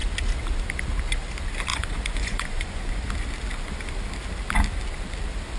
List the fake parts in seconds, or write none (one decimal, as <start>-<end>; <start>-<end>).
1.7-3.1